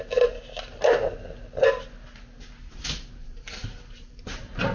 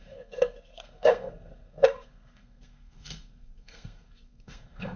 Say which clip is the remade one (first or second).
second